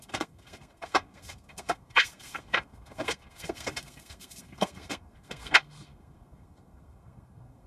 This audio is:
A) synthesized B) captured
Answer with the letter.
A